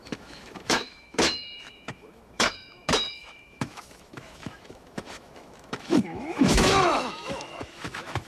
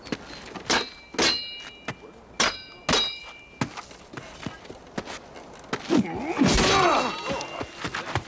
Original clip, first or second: second